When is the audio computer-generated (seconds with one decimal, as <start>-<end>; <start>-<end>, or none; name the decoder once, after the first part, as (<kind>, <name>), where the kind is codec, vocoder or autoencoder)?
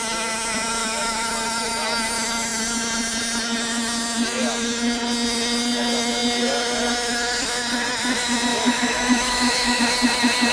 0.8-1.3 (autoencoder, DAC-VAE); 8.5-9.8